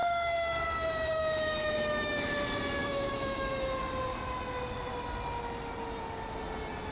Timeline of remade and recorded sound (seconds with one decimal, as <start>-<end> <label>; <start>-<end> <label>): 0.0-2.2 remade; 2.2-2.8 recorded; 2.8-3.8 remade; 3.8-6.9 recorded